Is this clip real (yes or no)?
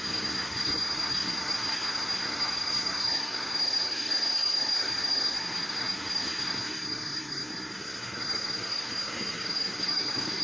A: no